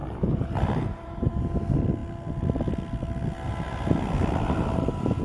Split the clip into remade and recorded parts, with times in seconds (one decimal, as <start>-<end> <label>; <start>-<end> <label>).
0.0-1.4 remade; 1.4-5.2 recorded